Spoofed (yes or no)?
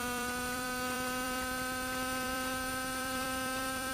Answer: yes